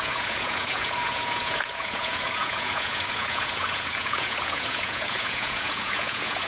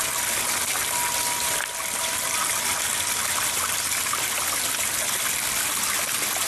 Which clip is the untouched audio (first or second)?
second